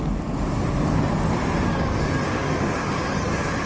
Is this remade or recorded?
recorded